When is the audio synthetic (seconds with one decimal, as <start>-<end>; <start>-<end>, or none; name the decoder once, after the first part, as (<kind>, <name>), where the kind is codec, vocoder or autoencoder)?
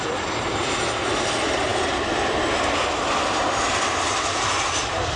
none